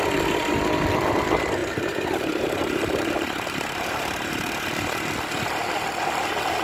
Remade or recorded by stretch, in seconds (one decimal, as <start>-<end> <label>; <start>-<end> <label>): 0.0-1.6 recorded; 1.6-4.5 remade; 4.5-6.6 recorded